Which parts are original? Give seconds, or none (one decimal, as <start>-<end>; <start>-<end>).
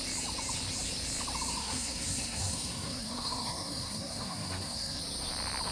0.0-1.6; 5.0-5.7